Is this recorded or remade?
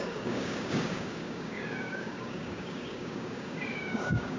remade